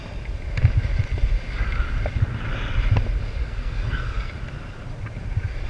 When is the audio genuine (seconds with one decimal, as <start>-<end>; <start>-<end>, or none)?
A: 0.0-3.4; 4.3-5.7